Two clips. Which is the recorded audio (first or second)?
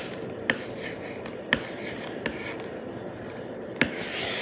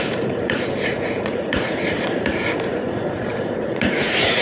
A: first